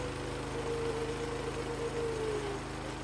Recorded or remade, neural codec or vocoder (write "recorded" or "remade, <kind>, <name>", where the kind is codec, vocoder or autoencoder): recorded